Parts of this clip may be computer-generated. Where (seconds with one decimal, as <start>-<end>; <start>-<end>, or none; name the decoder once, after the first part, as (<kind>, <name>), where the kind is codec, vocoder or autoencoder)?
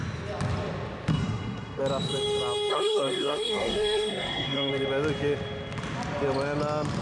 1.1-1.8 (codec, SNAC); 2.7-4.7